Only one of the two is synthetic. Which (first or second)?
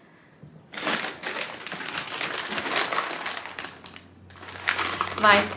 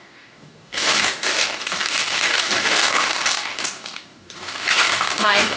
second